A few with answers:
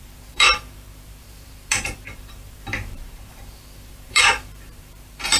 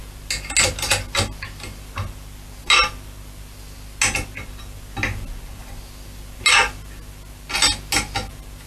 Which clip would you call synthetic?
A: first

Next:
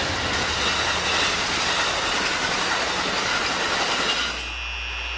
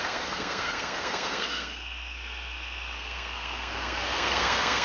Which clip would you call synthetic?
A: second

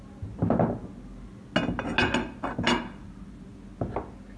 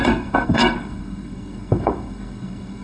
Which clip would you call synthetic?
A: second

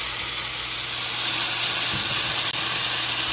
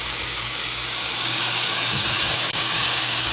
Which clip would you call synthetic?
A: second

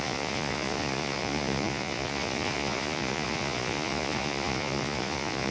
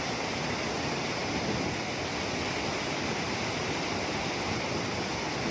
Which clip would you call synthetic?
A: first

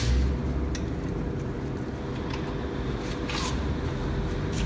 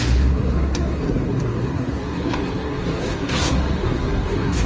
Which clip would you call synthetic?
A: second